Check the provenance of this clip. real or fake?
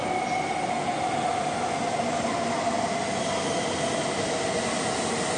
real